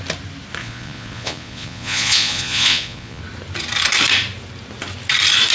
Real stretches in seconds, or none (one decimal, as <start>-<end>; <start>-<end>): 0.0-0.6; 3.2-5.5